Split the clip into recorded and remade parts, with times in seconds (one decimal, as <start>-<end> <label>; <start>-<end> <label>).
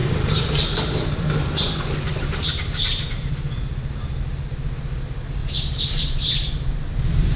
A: 0.0-4.2 remade; 4.2-5.4 recorded; 5.4-7.4 remade